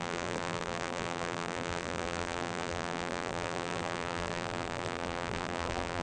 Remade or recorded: remade